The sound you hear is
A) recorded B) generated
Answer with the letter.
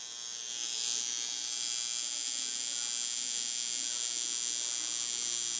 A